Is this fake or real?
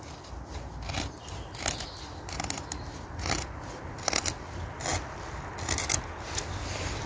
real